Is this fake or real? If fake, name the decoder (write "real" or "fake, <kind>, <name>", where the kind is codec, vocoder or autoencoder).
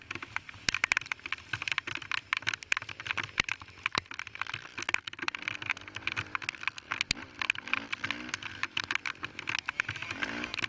real